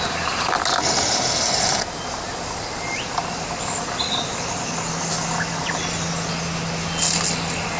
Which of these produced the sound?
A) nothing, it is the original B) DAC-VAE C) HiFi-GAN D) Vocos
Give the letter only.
A